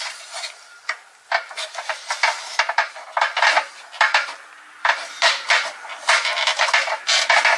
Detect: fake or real real